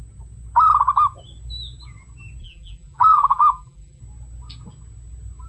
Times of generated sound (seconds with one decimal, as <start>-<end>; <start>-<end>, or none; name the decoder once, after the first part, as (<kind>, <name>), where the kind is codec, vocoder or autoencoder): 2.4-4.0 (vocoder, BigVGAN v2)